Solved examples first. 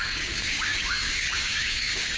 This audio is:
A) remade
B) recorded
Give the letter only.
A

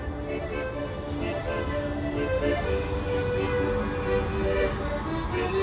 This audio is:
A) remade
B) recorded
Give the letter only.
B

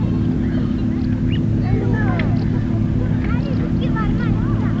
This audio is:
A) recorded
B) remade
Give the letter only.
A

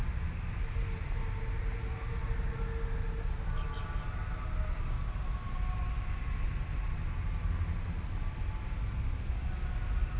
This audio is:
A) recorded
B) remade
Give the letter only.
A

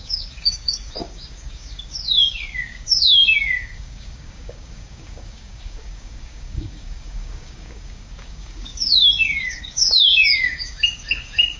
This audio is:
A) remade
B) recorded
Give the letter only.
A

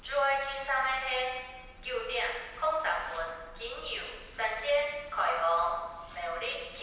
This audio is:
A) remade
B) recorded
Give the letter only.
B